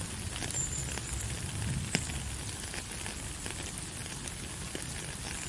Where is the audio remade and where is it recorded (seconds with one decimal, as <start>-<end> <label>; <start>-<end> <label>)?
0.0-5.5 recorded